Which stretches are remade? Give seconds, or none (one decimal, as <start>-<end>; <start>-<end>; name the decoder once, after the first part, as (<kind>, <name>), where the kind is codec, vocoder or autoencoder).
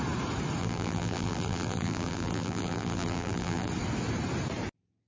0.6-3.7 (vocoder, BigVGAN v2)